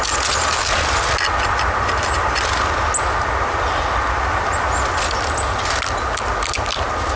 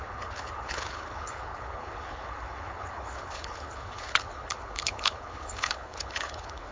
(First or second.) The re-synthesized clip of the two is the second